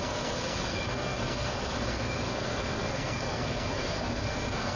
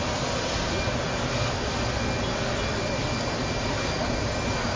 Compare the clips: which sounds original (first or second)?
second